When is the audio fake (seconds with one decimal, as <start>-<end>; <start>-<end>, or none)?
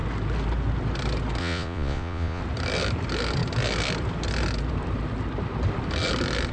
1.4-2.4